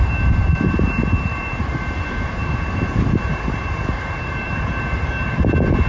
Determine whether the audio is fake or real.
fake